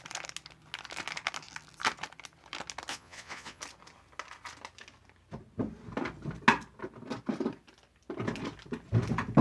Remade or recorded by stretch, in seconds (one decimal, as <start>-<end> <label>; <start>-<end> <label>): 0.0-2.9 recorded; 2.9-3.6 remade; 3.6-9.4 recorded